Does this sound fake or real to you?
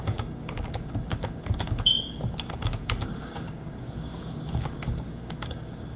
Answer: fake